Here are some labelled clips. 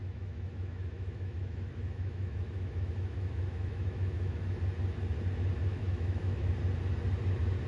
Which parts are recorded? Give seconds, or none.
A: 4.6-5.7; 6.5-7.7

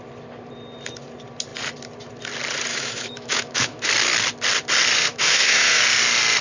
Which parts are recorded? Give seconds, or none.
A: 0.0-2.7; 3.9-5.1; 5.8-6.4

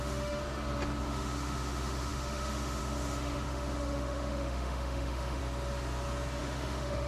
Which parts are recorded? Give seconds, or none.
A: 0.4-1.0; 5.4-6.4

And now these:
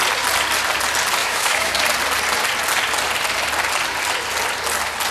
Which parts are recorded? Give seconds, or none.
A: 0.0-1.2; 1.8-5.1

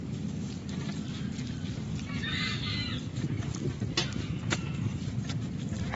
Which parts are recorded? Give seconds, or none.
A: 0.0-6.0